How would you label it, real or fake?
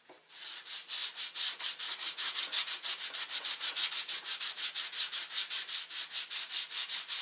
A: real